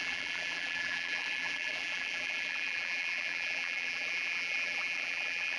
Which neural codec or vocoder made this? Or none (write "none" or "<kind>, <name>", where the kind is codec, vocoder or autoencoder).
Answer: vocoder, BigVGAN v2